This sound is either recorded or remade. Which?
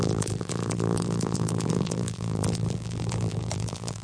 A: remade